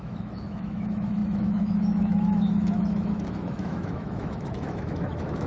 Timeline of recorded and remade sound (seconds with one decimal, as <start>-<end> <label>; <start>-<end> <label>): 0.0-5.5 remade